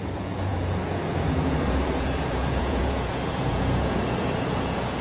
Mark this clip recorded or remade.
remade